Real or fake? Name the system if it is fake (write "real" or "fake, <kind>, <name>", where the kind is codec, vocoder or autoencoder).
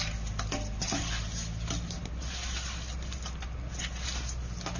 real